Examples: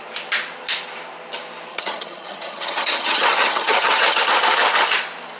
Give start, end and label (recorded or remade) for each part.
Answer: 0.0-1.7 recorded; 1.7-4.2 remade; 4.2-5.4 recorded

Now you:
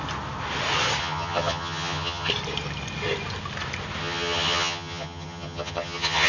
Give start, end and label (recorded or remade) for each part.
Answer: 0.0-1.0 recorded; 1.0-2.3 remade; 2.3-4.0 recorded; 4.0-6.3 remade

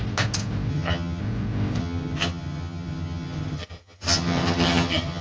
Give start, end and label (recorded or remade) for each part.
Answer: 0.0-0.7 recorded; 0.7-1.2 remade; 1.2-1.8 recorded; 1.8-5.2 remade

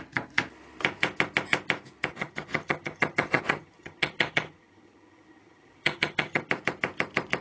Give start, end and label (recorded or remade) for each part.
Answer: 0.0-2.1 recorded; 2.1-6.5 remade; 6.5-7.4 recorded

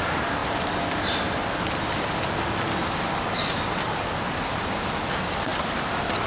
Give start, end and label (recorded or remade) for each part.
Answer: 0.0-6.3 recorded